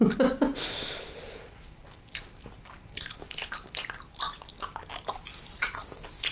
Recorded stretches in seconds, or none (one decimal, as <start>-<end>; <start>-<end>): 0.0-6.3